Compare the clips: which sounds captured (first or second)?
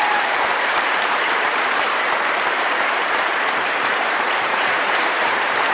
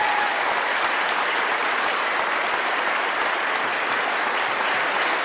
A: second